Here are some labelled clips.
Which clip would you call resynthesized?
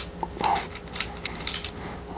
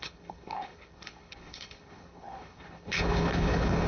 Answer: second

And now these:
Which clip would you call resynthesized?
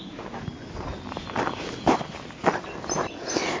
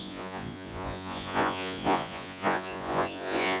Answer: second